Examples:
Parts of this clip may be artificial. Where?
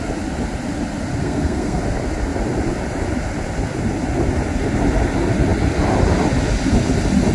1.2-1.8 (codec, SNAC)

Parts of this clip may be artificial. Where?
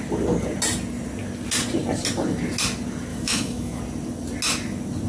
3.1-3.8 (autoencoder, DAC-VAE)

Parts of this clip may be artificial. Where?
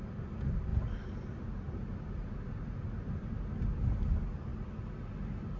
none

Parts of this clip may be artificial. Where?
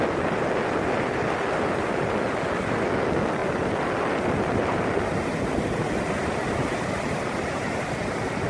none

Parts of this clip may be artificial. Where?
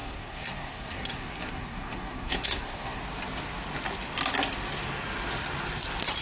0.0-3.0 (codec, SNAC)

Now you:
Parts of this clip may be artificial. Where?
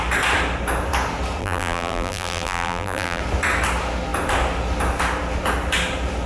1.4-3.2 (vocoder, BigVGAN v2)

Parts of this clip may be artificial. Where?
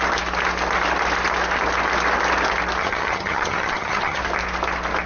2.8-4.2 (vocoder, HiFi-GAN)